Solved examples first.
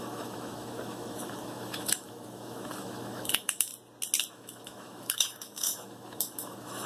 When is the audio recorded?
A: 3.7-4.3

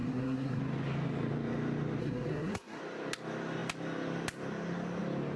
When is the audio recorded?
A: 0.6-2.0; 2.8-5.4

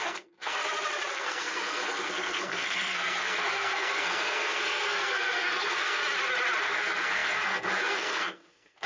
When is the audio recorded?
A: 0.6-1.1; 6.0-6.6

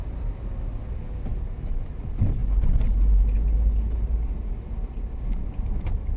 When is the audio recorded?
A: 0.0-6.2

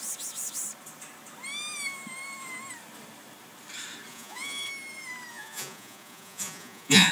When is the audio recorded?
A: 0.0-4.1; 4.7-5.3

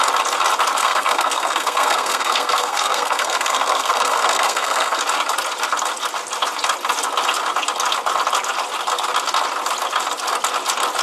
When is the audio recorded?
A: 0.0-0.8; 5.0-11.0